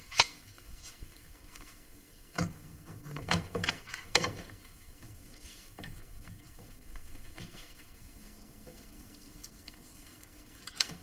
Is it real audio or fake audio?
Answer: fake